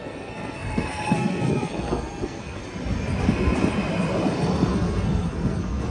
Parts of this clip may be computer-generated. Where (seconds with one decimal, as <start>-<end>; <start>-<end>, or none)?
0.0-2.6; 4.7-5.9